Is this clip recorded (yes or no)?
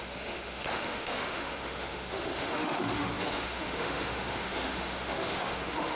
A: no